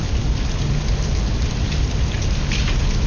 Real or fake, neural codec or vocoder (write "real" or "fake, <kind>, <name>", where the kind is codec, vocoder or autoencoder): real